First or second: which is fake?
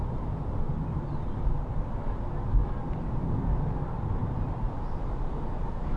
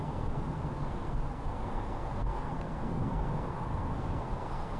second